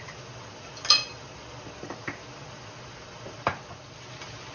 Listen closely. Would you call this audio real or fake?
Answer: real